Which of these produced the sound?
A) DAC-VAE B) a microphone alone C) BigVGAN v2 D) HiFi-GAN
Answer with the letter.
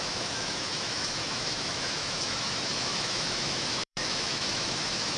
A